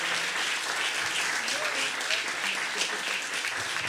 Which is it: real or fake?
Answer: real